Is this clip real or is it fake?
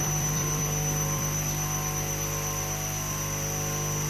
fake